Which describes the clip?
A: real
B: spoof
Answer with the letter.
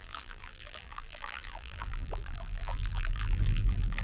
B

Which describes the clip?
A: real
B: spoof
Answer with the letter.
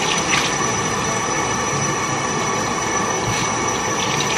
A